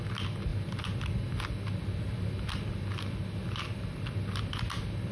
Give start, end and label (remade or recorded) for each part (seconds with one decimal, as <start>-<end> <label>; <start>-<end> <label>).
0.0-5.1 recorded